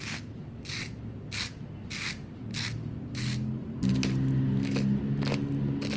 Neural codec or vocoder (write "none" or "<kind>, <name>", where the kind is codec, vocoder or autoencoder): none